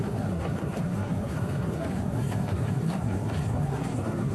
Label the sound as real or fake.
fake